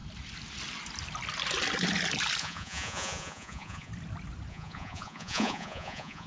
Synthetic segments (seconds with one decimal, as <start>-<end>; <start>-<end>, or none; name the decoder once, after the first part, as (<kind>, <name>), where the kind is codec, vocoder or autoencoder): 2.4-3.9 (vocoder, Vocos); 4.5-6.3